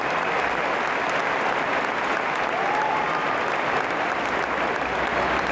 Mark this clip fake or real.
real